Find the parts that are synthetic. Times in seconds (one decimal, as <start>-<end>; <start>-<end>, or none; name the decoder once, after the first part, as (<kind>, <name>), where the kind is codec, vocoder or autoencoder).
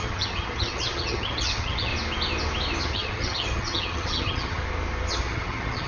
0.0-1.9 (vocoder, HiFi-GAN); 2.8-4.6; 5.1-5.9